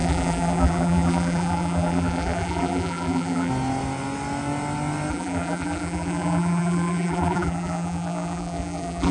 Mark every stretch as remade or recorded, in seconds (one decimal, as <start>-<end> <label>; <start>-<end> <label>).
0.0-3.5 remade; 3.5-5.1 recorded; 5.1-9.1 remade

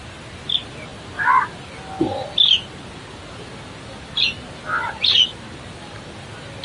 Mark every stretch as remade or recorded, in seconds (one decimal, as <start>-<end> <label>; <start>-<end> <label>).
0.0-6.6 recorded

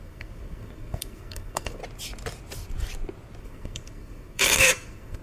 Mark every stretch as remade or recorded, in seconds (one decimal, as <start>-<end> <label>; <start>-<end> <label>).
0.0-1.8 remade; 1.8-3.4 recorded; 3.4-5.2 remade

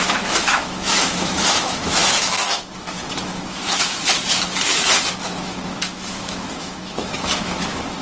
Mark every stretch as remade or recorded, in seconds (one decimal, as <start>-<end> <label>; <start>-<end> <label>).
0.0-8.0 remade

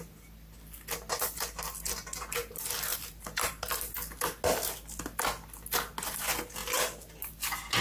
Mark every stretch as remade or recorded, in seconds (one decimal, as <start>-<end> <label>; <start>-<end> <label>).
0.0-2.9 recorded; 2.9-3.5 remade; 3.5-7.8 recorded

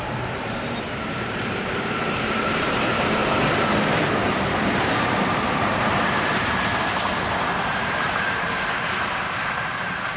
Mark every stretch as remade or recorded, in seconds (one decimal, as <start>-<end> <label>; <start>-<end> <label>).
0.0-3.2 remade; 3.2-4.8 recorded; 4.8-6.7 remade; 6.7-7.5 recorded; 7.5-10.2 remade